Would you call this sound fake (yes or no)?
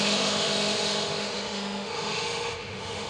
yes